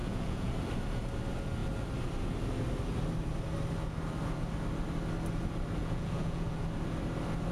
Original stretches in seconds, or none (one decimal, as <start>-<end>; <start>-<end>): 0.5-5.8; 6.6-7.5